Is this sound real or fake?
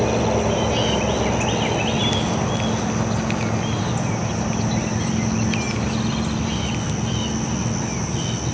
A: real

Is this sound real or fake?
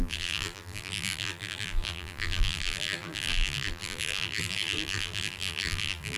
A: fake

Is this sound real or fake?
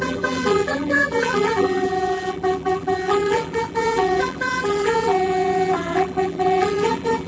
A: fake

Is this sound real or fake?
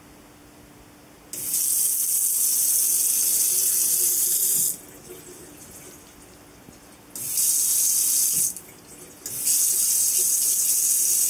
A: real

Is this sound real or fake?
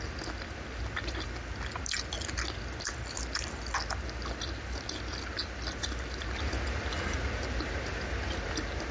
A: real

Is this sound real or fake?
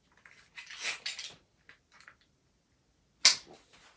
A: real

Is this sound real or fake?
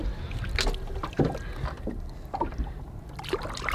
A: real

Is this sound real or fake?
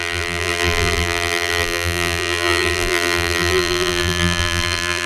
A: fake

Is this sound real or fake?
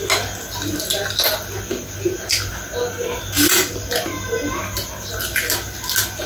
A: real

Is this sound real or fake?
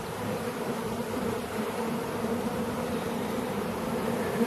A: fake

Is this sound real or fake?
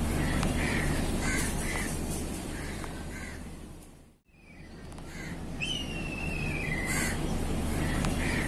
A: fake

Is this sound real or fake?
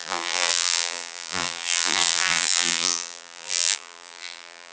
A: fake